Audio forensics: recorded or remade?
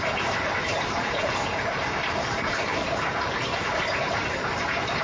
remade